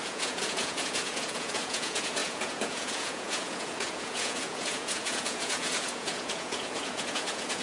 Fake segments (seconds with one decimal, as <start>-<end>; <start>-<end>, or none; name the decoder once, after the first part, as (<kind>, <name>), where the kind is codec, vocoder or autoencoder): 0.0-7.6 (vocoder, Vocos)